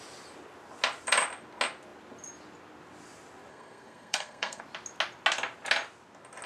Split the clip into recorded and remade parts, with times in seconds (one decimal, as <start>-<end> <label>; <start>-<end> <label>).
0.0-3.5 recorded; 3.5-4.6 remade; 4.6-6.5 recorded